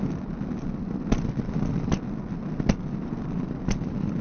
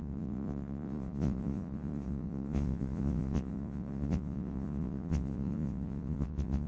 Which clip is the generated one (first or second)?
second